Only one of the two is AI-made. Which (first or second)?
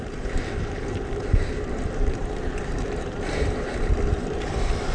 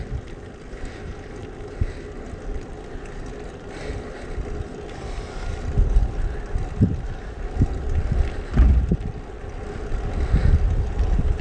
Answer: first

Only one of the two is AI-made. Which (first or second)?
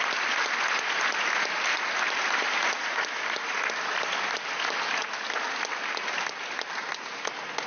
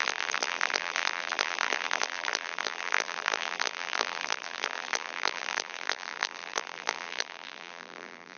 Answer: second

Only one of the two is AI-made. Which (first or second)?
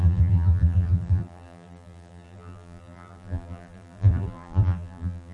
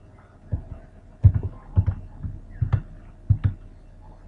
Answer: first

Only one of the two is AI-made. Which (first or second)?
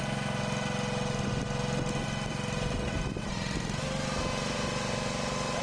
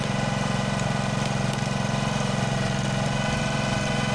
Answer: second